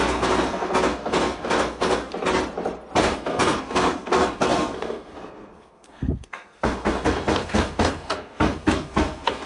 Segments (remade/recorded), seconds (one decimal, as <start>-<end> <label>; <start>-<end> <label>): 0.0-2.1 remade; 2.1-3.0 recorded; 3.0-9.5 remade

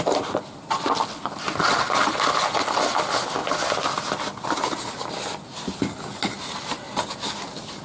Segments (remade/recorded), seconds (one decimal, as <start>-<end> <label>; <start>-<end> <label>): 0.0-7.8 recorded

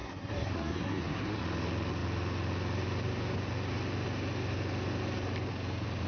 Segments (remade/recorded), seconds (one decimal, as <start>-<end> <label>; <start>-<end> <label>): 0.0-1.4 remade; 1.4-6.1 recorded

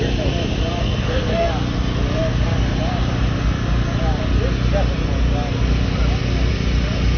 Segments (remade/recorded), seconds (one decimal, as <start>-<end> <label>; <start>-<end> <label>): 0.0-0.8 recorded; 0.8-1.5 remade; 1.5-7.2 recorded

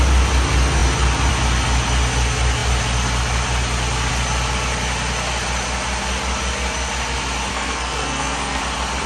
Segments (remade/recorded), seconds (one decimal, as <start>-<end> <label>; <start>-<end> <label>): 0.0-7.5 recorded; 7.5-8.6 remade; 8.6-9.1 recorded

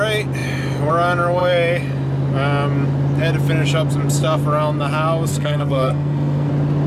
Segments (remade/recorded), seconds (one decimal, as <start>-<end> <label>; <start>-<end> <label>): 0.0-5.3 recorded; 5.3-6.5 remade; 6.5-6.9 recorded

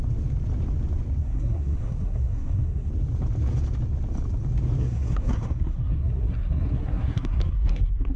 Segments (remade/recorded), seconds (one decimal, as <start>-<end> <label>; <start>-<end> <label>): 0.0-1.2 recorded; 1.2-2.9 remade; 2.9-4.8 recorded; 4.8-8.2 remade

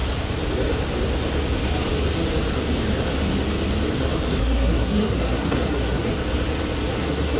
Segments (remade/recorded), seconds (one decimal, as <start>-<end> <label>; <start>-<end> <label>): 0.0-4.4 recorded; 4.4-6.1 remade; 6.1-6.9 recorded; 6.9-7.4 remade